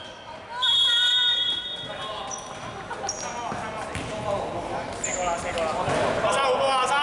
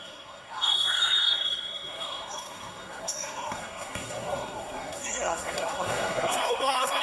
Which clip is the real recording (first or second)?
first